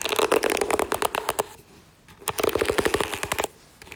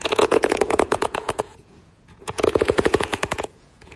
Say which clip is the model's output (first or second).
second